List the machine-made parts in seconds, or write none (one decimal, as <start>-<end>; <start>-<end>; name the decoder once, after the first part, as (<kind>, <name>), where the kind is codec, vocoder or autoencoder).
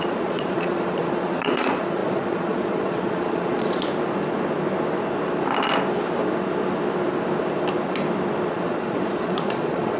0.0-3.9 (vocoder, Vocos); 8.5-10.0